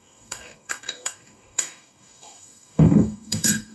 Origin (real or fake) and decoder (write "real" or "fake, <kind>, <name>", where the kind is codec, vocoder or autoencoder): fake, codec, DAC